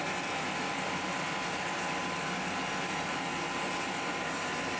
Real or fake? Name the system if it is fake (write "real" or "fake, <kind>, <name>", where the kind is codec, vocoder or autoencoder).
real